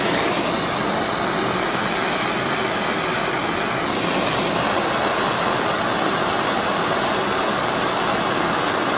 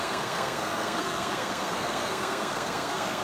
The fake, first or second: second